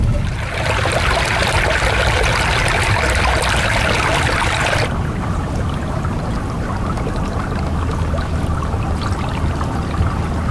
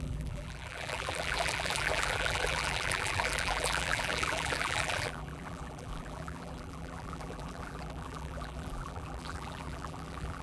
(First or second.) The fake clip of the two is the second